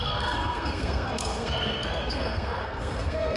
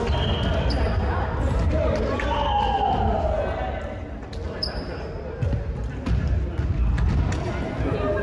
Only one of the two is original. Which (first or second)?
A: second